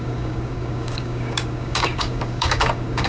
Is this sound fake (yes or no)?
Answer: yes